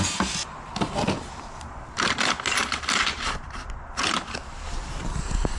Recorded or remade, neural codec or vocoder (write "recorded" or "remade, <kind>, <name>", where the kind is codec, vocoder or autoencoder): recorded